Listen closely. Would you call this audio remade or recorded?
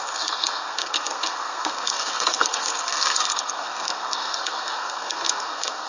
remade